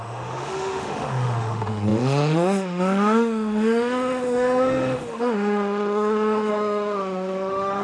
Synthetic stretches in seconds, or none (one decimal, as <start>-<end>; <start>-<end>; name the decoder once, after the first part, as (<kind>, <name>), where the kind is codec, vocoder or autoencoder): 0.0-7.8 (autoencoder, DAC-VAE)